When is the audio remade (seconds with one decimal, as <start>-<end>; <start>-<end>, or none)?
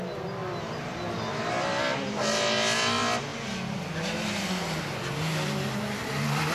none